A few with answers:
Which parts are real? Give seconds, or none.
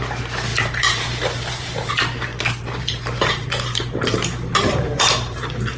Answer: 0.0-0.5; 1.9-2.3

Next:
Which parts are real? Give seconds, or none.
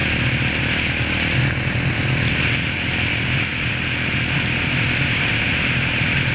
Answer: 0.0-1.9; 3.5-5.3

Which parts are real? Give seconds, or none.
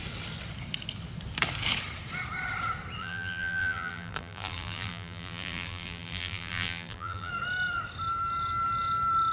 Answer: 0.0-3.0; 7.3-9.3